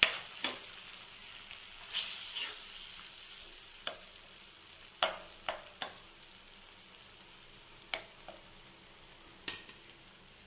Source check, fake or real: real